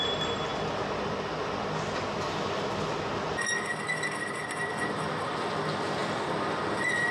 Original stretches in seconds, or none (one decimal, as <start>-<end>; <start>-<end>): 0.0-6.0